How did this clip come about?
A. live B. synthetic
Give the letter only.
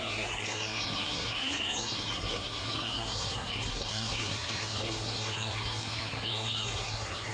B